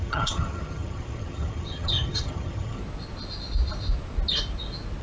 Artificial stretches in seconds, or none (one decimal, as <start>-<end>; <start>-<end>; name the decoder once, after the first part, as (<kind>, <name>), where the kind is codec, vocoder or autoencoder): 0.0-2.8 (vocoder, HiFi-GAN)